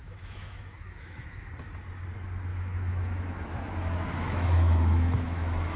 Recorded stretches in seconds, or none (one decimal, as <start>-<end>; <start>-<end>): 1.5-2.5